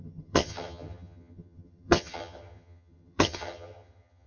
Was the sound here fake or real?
fake